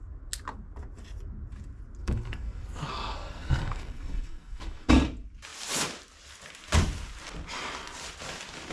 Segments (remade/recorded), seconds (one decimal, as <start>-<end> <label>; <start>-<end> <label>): 0.0-2.0 recorded; 2.0-4.9 remade; 4.9-8.7 recorded